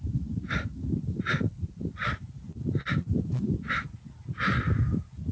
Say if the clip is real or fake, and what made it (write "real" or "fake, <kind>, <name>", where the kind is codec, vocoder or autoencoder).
real